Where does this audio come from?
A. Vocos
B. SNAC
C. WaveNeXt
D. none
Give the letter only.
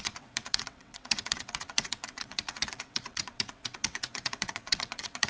C